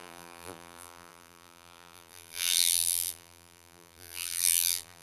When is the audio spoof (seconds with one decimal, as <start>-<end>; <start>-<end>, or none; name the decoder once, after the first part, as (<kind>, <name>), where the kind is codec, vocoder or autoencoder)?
0.0-5.0 (vocoder, BigVGAN v2)